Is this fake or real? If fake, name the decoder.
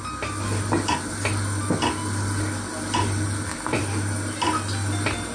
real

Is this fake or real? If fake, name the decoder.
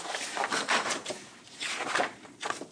real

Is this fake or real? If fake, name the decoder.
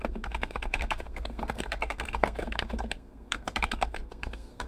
fake, codec, SNAC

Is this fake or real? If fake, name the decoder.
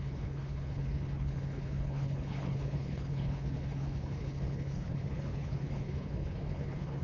fake, codec, HILCodec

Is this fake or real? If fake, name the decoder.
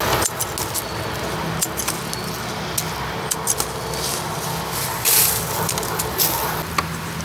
real